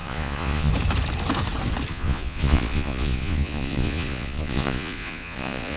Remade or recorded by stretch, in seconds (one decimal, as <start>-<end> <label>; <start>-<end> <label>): 0.0-0.7 remade; 0.7-1.9 recorded; 1.9-5.8 remade